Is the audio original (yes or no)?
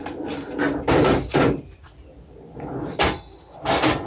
yes